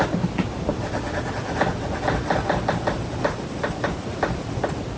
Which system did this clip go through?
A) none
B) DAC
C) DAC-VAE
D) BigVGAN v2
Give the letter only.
A